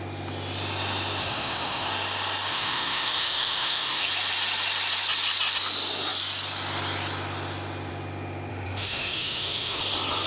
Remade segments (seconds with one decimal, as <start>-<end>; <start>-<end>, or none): 1.2-1.9; 2.5-4.1; 8.5-9.8